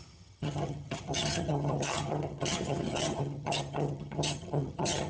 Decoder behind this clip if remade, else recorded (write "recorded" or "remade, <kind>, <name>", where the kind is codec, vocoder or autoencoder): remade, vocoder, HiFi-GAN